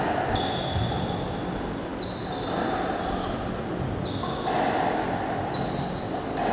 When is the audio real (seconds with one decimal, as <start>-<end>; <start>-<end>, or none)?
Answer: 0.0-6.5